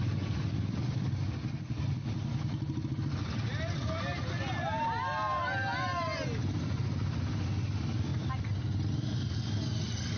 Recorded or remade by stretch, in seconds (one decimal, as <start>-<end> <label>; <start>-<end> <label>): 0.0-10.2 recorded